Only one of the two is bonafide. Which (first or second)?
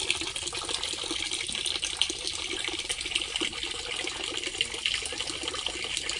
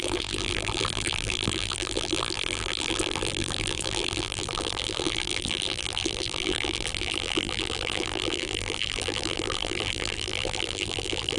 first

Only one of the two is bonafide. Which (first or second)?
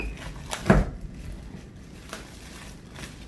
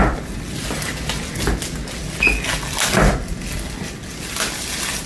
second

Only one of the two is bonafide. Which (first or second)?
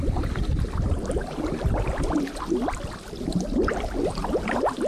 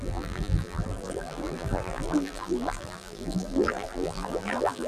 first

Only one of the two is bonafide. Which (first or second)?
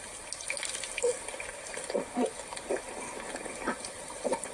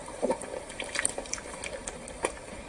first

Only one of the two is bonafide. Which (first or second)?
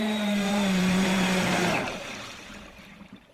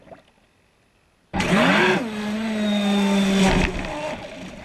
second